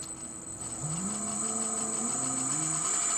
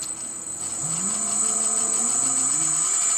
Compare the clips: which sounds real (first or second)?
first